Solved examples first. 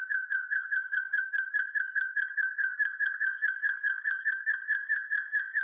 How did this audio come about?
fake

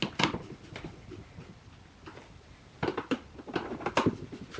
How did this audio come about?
real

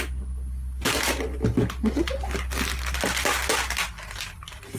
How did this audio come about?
real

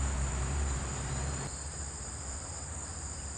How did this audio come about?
fake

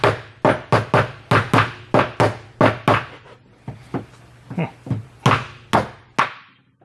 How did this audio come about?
real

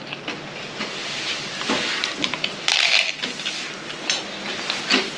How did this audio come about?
real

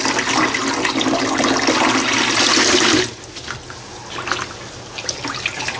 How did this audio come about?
real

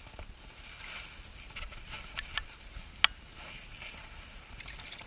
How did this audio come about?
real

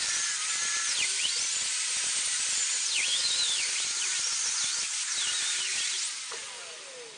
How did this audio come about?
real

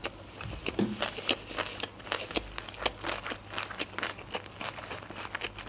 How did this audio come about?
real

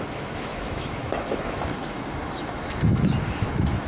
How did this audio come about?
fake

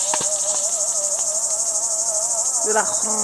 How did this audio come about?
real